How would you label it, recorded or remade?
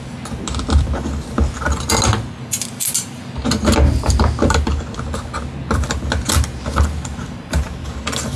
recorded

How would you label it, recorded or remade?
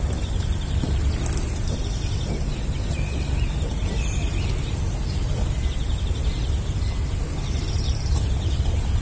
recorded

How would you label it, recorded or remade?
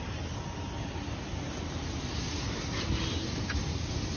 recorded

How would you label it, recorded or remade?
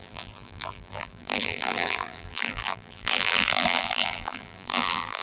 remade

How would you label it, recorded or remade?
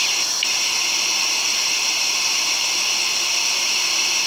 remade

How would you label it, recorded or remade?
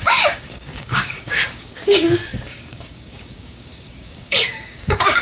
remade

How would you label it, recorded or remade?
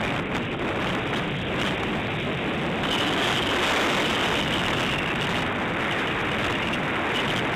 recorded